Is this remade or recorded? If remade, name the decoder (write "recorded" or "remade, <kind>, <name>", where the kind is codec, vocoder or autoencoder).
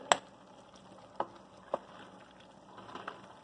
recorded